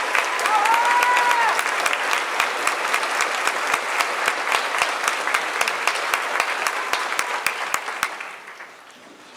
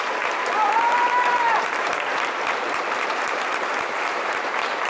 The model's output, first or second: second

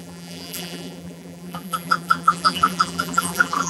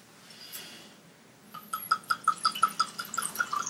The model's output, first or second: first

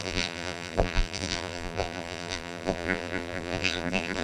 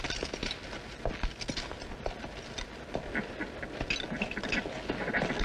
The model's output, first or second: first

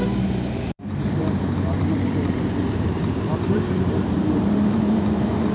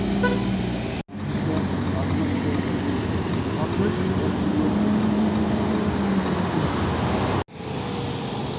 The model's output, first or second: first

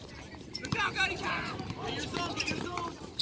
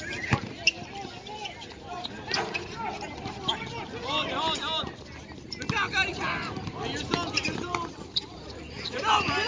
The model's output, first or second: first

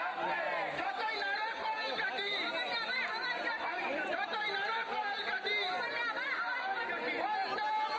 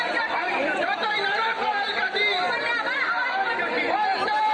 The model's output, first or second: second